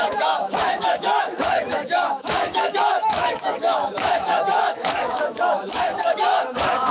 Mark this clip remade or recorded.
remade